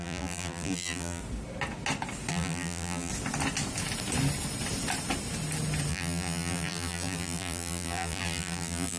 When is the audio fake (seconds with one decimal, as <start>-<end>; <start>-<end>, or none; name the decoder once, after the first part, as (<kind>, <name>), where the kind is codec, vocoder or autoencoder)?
0.0-1.2 (vocoder, BigVGAN v2); 2.3-3.1; 5.9-9.0